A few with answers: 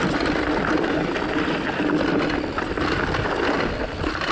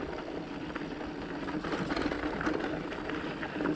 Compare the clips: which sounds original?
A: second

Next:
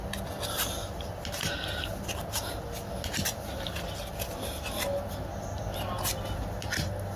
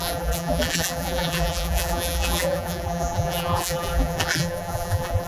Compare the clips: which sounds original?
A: first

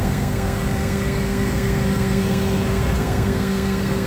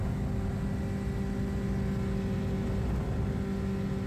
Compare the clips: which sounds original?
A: second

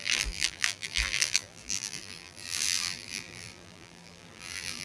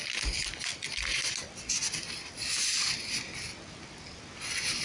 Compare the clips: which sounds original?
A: second